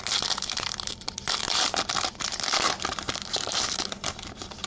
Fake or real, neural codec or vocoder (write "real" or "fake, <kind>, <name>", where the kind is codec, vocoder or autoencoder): real